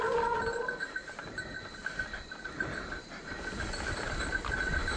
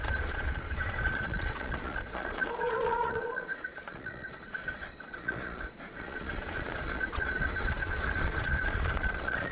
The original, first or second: first